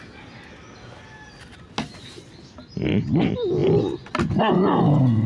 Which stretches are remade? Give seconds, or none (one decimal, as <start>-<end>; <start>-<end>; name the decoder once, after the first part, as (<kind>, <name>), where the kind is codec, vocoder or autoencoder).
none